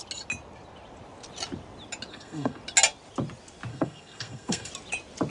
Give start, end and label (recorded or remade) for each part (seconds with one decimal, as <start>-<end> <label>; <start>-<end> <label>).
0.0-2.1 recorded; 2.1-2.6 remade; 2.6-3.7 recorded; 3.7-4.7 remade; 4.7-5.3 recorded